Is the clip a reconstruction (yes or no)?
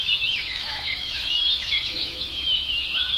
yes